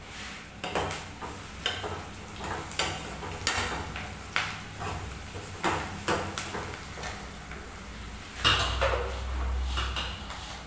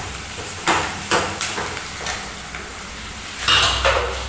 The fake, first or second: second